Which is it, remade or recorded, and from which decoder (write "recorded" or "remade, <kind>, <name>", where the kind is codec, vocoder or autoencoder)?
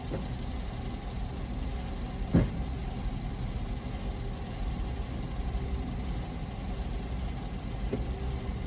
recorded